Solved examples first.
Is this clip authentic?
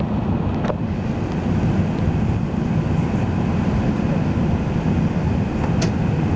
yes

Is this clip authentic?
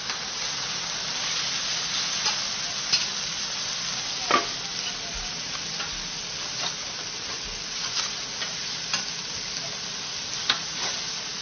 yes